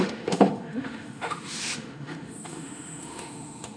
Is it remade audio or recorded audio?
remade